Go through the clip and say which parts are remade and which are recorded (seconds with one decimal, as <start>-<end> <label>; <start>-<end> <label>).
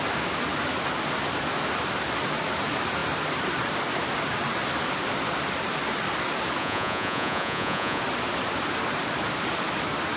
0.0-6.6 recorded; 6.6-8.0 remade; 8.0-10.2 recorded